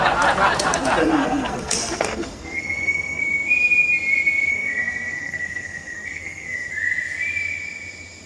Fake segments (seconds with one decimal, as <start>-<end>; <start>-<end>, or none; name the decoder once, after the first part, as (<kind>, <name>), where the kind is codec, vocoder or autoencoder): 1.0-3.2 (codec, SNAC); 4.5-6.7